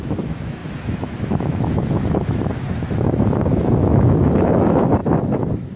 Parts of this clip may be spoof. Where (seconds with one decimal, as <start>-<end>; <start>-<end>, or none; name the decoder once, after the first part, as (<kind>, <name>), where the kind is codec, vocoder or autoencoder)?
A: 0.0-5.8 (autoencoder, DAC-VAE)